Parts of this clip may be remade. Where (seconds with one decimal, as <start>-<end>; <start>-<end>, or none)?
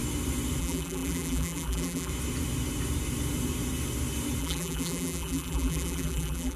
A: 0.6-2.1; 4.4-6.6